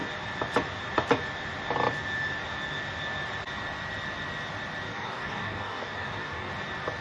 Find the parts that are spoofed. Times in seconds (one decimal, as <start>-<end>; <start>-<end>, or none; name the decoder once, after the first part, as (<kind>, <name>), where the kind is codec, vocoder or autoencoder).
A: 4.9-6.5 (codec, DAC)